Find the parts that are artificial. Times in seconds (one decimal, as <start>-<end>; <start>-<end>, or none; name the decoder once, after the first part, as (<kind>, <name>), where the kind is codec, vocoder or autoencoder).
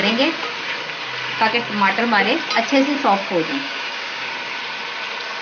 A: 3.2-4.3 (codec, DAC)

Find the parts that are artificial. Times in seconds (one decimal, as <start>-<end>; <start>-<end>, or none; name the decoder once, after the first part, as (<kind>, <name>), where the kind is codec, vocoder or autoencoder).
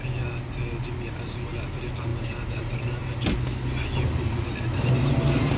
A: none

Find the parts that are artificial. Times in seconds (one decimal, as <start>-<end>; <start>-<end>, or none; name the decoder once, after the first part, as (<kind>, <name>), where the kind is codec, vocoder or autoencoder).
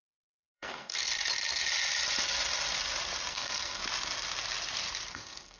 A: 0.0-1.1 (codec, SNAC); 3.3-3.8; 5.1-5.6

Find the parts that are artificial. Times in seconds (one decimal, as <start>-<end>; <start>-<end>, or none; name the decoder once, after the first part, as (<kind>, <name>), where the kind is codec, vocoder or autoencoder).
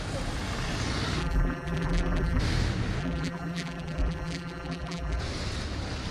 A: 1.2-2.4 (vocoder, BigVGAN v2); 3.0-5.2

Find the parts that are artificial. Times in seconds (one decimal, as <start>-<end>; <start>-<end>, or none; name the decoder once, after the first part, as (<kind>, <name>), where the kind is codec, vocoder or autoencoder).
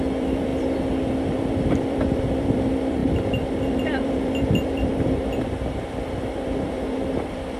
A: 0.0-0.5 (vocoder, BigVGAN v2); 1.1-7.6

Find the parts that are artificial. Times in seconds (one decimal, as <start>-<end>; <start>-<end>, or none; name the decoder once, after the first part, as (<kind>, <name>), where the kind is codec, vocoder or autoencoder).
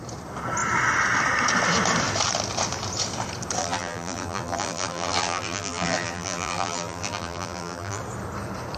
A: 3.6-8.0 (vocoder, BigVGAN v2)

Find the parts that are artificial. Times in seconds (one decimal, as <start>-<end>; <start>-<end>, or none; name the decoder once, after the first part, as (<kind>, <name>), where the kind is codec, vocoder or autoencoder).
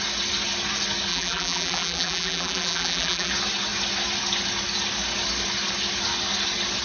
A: 1.1-3.3 (vocoder, BigVGAN v2)